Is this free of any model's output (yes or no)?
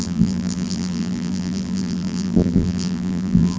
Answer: no